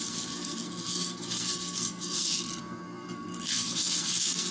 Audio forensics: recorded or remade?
remade